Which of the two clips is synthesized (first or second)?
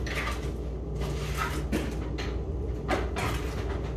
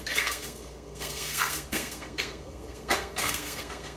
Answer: second